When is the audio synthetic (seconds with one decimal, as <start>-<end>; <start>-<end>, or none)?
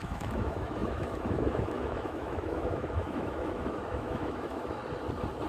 0.0-4.8